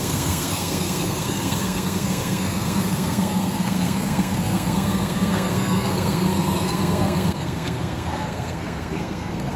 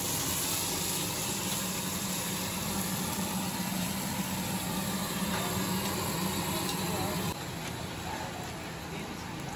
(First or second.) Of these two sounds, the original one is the second